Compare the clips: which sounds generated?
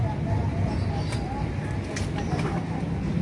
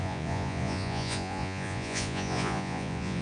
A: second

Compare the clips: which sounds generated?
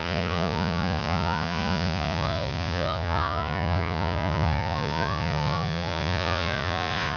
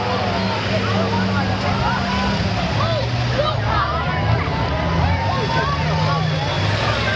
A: first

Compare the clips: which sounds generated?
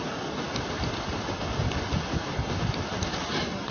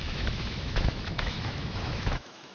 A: second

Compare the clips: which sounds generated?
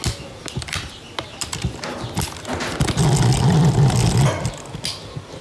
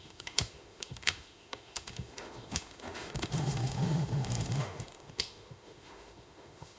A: second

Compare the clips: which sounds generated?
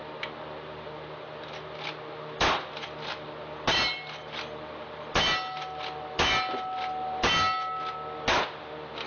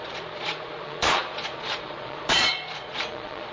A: second